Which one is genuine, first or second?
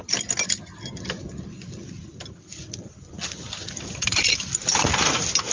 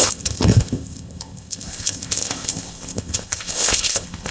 first